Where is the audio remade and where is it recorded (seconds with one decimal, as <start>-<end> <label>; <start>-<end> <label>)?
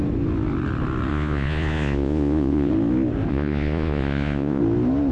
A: 0.0-1.1 recorded; 1.1-2.7 remade; 2.7-3.3 recorded; 3.3-4.6 remade; 4.6-5.1 recorded